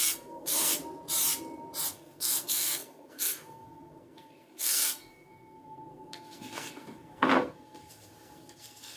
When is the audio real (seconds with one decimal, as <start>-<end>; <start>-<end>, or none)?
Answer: 0.8-1.9